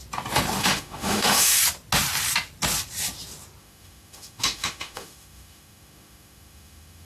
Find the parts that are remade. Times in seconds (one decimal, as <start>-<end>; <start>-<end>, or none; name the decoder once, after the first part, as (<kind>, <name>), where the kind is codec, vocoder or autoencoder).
0.6-1.6 (autoencoder, DAC-VAE); 3.6-7.0